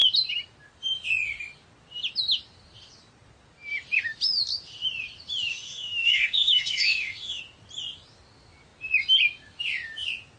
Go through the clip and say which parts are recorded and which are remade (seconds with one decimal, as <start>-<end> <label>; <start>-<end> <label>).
0.0-5.5 recorded; 5.5-7.4 remade; 7.4-10.4 recorded